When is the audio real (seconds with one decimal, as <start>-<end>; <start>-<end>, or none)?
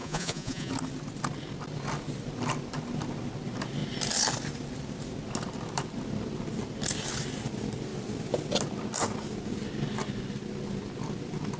0.7-11.6